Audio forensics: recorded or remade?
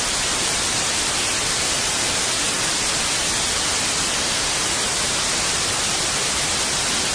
recorded